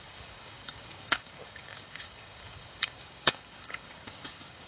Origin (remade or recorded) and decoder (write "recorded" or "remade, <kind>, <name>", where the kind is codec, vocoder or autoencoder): remade, codec, DAC